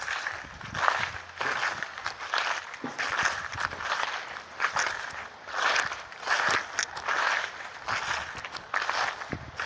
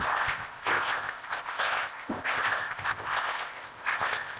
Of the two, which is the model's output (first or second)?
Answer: second